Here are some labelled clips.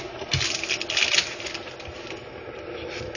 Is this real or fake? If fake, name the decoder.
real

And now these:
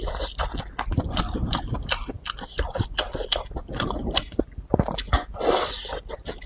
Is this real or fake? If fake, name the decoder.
real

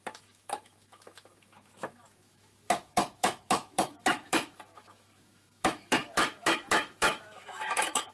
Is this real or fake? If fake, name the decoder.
fake, autoencoder, DAC-VAE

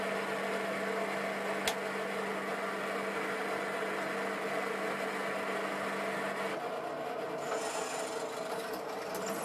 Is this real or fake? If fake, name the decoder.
real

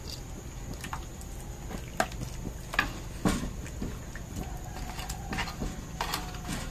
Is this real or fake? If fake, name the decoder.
real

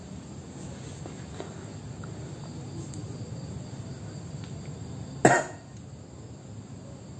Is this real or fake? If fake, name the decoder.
real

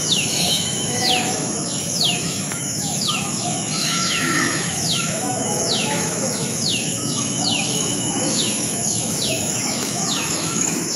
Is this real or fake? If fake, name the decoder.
fake, autoencoder, DAC-VAE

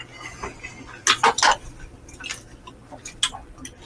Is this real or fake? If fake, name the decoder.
real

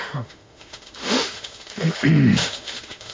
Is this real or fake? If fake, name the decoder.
fake, autoencoder, DAC-VAE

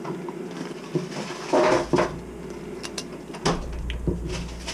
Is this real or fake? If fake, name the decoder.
real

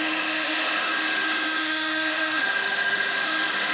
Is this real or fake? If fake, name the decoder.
fake, autoencoder, DAC-VAE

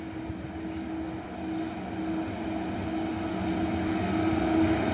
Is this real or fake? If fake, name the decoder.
real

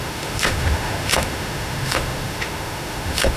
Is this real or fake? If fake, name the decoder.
fake, autoencoder, DAC-VAE